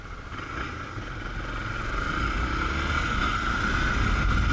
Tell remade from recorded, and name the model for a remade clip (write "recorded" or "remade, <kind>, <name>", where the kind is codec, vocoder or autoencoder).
recorded